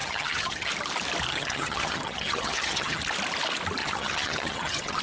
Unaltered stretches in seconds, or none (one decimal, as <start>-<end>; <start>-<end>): 0.7-1.3; 3.0-3.8